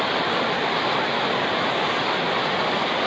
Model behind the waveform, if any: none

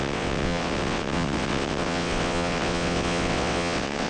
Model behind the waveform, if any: vocoder, WaveNeXt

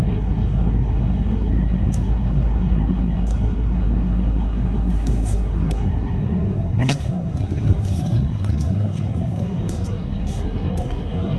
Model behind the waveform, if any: codec, SNAC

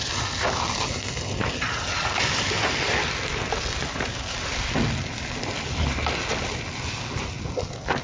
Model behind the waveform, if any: none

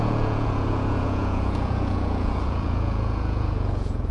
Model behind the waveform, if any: vocoder, Vocos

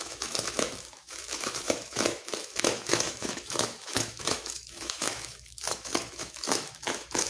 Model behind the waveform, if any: autoencoder, DAC-VAE